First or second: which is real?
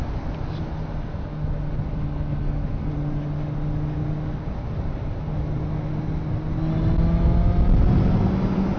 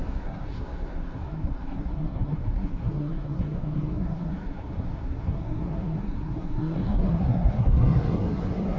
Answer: first